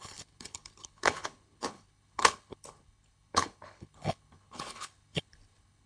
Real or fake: fake